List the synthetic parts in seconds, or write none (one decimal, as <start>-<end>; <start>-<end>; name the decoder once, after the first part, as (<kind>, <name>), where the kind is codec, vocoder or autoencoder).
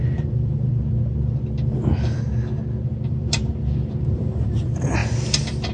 0.0-0.7 (vocoder, BigVGAN v2); 3.1-5.0